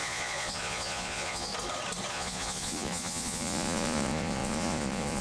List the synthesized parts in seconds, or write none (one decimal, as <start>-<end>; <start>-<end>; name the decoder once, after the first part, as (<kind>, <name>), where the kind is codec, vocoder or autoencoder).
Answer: 0.0-1.5 (vocoder, Vocos); 2.1-5.2